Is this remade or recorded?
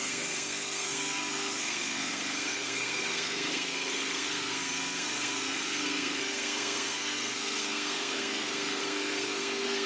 remade